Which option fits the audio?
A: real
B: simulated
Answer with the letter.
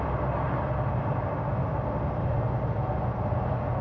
A